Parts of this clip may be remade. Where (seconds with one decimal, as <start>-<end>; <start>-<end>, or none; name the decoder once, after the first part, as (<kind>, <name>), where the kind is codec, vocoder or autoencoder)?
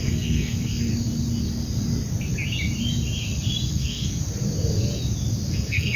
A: 0.0-0.9 (codec, SNAC); 3.7-4.2; 5.5-6.0